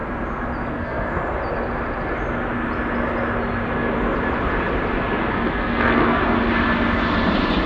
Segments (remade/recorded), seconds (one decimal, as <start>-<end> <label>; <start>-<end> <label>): 0.0-0.7 recorded; 0.7-1.2 remade; 1.2-5.3 recorded; 5.3-6.2 remade; 6.2-7.7 recorded

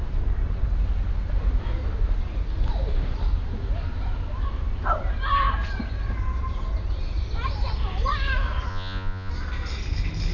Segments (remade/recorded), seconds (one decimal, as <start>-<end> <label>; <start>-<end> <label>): 0.0-8.7 recorded; 8.7-9.3 remade; 9.3-10.3 recorded

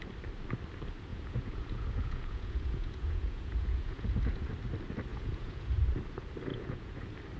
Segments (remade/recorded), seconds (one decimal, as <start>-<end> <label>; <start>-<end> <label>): 0.0-1.1 recorded; 1.1-4.5 remade; 4.5-5.1 recorded; 5.1-5.8 remade; 5.8-6.5 recorded; 6.5-7.0 remade; 7.0-7.4 recorded

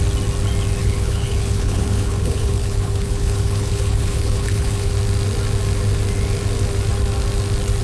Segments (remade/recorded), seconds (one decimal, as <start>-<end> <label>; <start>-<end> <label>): 0.0-0.8 recorded; 0.8-4.9 remade; 4.9-7.8 recorded

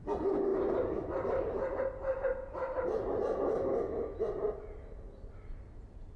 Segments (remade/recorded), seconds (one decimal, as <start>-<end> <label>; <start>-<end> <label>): 0.0-6.2 recorded